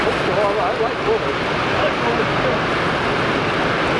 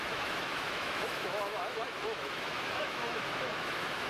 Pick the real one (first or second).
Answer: first